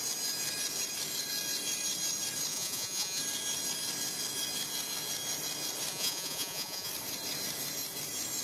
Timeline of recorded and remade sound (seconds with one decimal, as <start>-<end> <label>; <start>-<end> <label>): 0.0-2.5 recorded; 2.5-3.2 remade; 3.2-5.9 recorded; 5.9-6.9 remade; 6.9-8.4 recorded